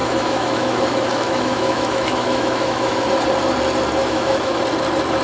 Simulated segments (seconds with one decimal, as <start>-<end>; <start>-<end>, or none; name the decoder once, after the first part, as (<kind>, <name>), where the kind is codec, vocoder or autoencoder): 0.0-3.1 (autoencoder, DAC-VAE); 4.0-4.6